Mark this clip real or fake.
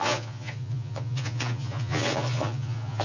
fake